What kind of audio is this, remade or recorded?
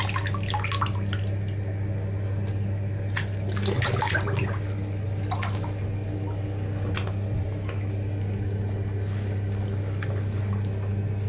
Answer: recorded